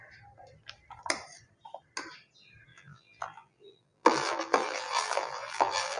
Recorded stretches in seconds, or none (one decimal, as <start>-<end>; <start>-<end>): 0.0-2.7